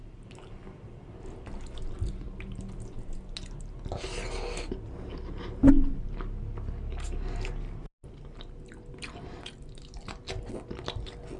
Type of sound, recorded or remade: recorded